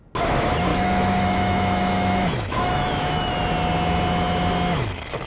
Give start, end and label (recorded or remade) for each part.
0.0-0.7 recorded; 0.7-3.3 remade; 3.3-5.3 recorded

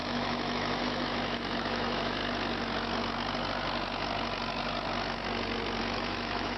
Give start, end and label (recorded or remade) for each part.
0.0-2.2 remade; 2.2-5.8 recorded; 5.8-6.6 remade

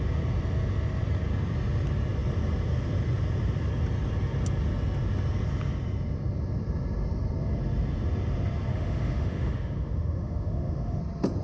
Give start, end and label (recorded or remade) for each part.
0.0-8.7 recorded; 8.7-11.0 remade; 11.0-11.4 recorded

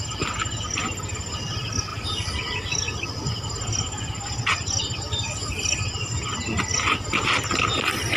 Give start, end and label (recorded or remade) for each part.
0.0-8.2 recorded

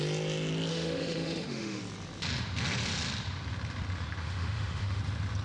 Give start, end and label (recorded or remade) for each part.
0.0-0.7 recorded; 0.7-1.8 remade; 1.8-4.2 recorded; 4.2-5.0 remade; 5.0-5.4 recorded

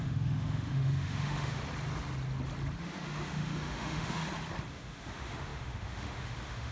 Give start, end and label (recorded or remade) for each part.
0.0-1.6 remade; 1.6-2.8 recorded; 2.8-4.2 remade; 4.2-4.7 recorded; 4.7-6.7 remade

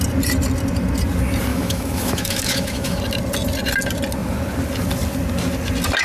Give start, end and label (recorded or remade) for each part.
0.0-1.5 recorded; 1.5-3.0 remade; 3.0-6.0 recorded

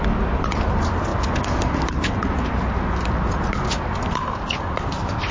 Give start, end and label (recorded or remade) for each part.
0.0-5.3 recorded